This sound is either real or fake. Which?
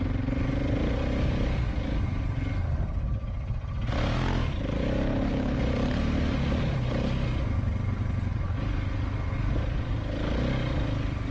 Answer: real